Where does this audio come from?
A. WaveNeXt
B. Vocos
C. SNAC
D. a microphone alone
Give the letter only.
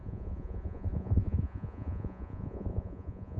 B